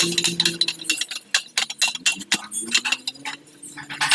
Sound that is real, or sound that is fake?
real